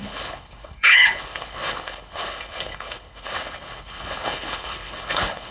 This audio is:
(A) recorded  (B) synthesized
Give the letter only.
B